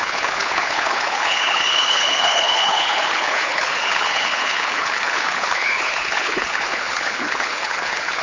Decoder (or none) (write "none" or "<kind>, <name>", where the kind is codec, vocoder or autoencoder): codec, HILCodec